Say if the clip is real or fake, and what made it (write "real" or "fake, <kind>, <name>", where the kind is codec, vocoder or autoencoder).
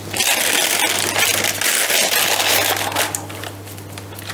real